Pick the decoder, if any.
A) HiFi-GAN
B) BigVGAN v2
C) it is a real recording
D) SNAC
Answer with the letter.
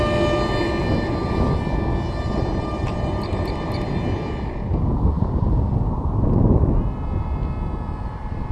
C